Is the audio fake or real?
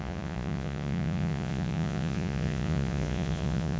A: fake